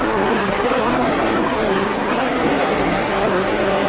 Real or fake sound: fake